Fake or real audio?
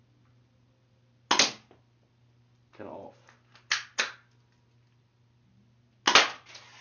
real